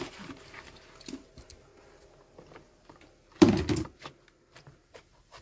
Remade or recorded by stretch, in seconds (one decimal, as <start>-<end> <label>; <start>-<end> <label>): 0.0-1.7 remade; 1.7-4.9 recorded; 4.9-5.4 remade